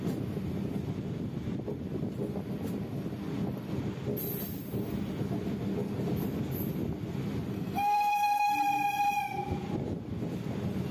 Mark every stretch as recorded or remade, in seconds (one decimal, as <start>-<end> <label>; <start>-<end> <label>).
0.0-7.5 recorded; 7.5-8.5 remade; 8.5-10.9 recorded